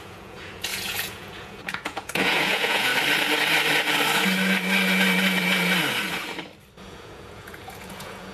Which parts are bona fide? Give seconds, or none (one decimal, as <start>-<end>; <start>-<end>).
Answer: 2.9-6.8